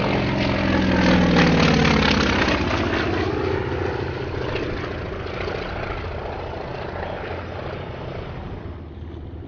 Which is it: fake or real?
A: real